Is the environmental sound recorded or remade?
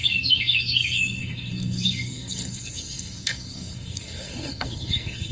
remade